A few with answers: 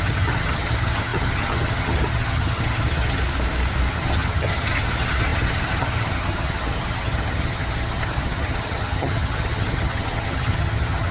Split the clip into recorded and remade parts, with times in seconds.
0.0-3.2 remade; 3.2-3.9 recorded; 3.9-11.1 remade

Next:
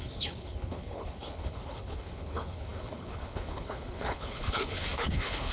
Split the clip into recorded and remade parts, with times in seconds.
0.0-5.5 remade

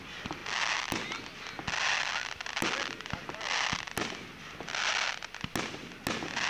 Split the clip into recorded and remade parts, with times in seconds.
0.0-6.5 recorded

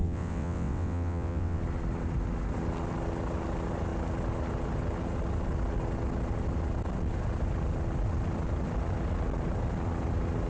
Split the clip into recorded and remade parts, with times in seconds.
0.0-1.6 remade; 1.6-10.5 recorded